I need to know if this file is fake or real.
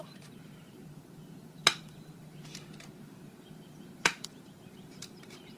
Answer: fake